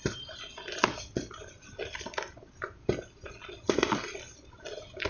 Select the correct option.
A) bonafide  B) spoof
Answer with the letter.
A